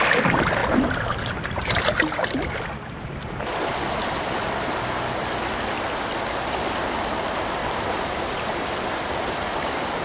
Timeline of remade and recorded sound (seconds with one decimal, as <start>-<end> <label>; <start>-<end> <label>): 0.0-0.6 recorded; 0.6-1.8 remade; 1.8-7.6 recorded; 7.6-9.1 remade; 9.1-10.0 recorded